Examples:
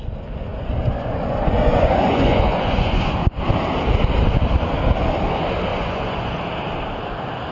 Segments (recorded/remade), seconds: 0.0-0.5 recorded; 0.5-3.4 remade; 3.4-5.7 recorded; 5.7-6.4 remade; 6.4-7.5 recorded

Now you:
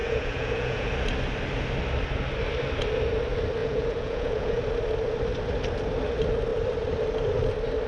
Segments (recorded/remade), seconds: 0.0-0.9 remade; 0.9-3.6 recorded; 3.6-4.6 remade; 4.6-7.9 recorded

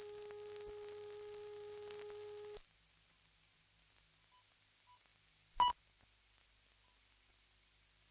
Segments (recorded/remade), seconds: 0.0-8.1 recorded

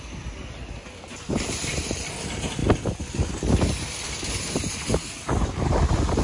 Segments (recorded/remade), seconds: 0.0-6.2 recorded

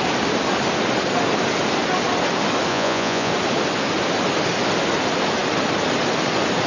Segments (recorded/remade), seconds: 0.0-2.7 recorded; 2.7-3.3 remade; 3.3-6.7 recorded